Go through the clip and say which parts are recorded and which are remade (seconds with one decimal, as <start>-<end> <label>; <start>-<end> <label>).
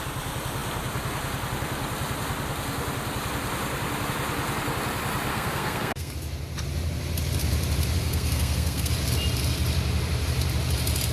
0.0-5.3 recorded; 5.3-6.1 remade; 6.1-8.0 recorded; 8.0-8.9 remade; 8.9-11.1 recorded